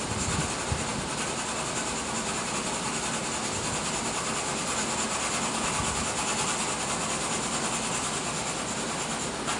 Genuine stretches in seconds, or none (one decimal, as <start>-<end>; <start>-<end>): 0.0-9.6